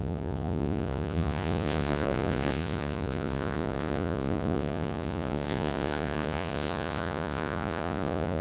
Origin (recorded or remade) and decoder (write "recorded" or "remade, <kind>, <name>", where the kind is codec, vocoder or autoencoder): remade, vocoder, Vocos